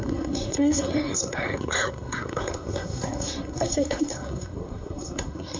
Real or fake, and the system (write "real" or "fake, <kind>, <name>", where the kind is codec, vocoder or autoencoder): fake, codec, SNAC